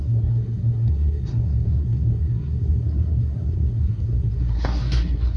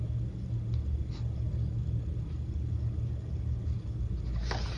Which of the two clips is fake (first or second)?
first